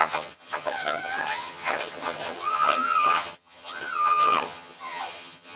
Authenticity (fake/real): fake